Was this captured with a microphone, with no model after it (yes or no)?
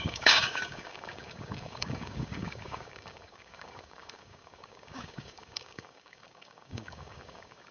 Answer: no